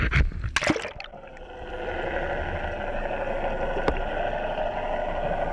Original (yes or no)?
yes